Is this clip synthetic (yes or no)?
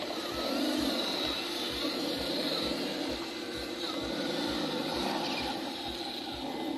no